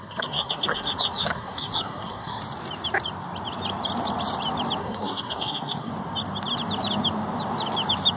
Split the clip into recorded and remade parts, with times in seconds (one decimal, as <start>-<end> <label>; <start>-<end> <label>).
0.0-2.4 remade; 2.4-4.8 recorded; 4.8-5.9 remade; 5.9-8.2 recorded